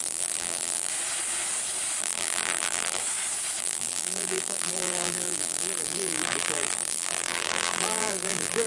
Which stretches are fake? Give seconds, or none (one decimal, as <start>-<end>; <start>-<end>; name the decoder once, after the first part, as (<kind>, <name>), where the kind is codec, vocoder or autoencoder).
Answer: 0.0-0.9 (vocoder, BigVGAN v2); 2.0-3.0; 3.6-8.7